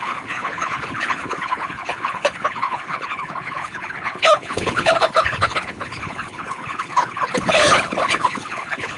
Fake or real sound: fake